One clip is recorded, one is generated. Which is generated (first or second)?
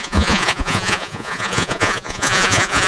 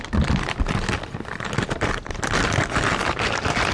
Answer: first